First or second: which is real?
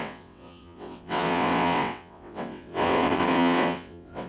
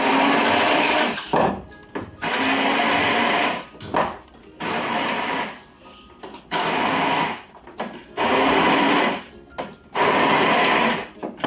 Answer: second